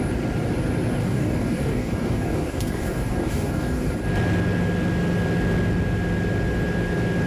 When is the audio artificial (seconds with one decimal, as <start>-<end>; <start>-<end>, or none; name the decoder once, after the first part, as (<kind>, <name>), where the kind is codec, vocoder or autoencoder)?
1.0-3.9 (codec, DAC)